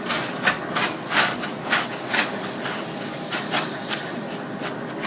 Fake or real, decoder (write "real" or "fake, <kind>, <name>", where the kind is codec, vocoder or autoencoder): real